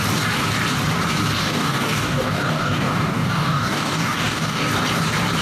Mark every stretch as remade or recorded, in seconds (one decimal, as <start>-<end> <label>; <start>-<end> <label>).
0.0-1.4 recorded; 1.4-4.6 remade; 4.6-5.4 recorded